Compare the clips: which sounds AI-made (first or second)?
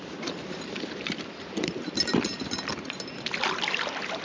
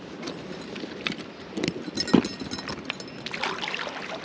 first